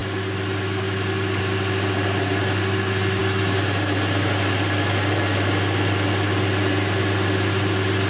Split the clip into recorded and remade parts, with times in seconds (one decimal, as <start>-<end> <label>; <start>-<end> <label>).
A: 0.0-8.1 recorded